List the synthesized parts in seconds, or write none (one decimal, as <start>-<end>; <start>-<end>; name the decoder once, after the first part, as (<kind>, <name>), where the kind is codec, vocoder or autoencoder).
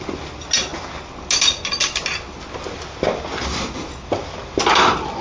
none